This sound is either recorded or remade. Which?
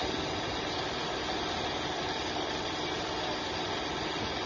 recorded